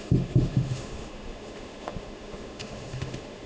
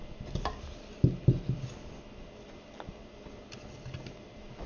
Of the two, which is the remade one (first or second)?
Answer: first